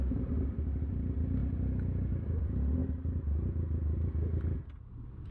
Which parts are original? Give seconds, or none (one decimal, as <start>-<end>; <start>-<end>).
1.4-2.1; 2.8-4.8